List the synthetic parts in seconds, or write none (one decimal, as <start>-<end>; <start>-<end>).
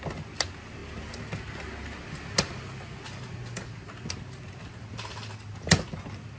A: none